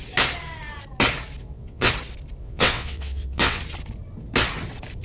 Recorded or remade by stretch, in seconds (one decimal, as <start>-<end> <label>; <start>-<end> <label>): 0.0-1.4 recorded; 1.4-1.9 remade; 1.9-2.4 recorded; 2.4-3.6 remade; 3.6-5.0 recorded